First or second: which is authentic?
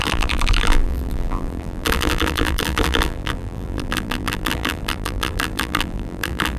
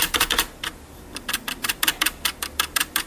second